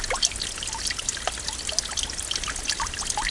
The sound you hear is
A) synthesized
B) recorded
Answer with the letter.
B